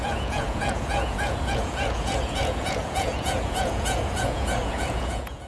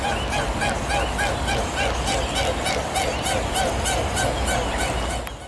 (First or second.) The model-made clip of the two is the first